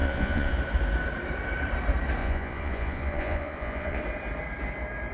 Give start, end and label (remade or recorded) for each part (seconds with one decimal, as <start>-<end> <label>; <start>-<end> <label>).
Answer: 0.0-0.5 remade; 0.5-2.2 recorded; 2.2-4.0 remade; 4.0-5.1 recorded